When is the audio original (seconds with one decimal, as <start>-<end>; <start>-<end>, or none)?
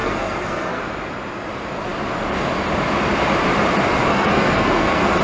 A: 0.8-4.1